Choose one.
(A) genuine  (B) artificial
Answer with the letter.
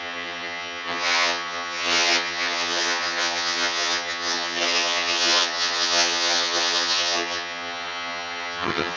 B